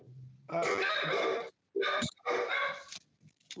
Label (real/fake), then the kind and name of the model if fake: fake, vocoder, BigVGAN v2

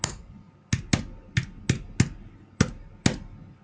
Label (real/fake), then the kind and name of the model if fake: real